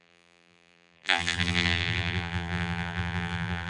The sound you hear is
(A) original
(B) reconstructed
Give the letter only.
B